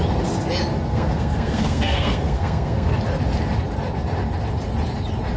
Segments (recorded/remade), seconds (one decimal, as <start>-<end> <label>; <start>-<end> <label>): 0.0-0.9 recorded; 0.9-2.9 remade; 2.9-5.4 recorded